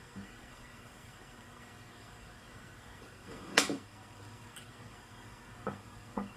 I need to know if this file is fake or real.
fake